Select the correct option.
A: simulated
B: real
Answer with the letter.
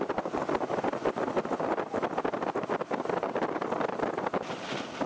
B